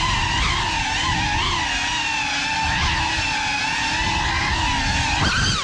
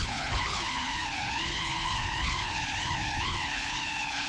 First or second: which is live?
first